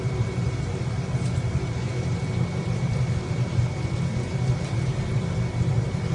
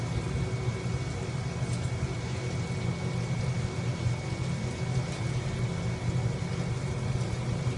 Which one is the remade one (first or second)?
first